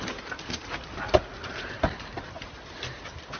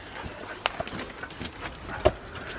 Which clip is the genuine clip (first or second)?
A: first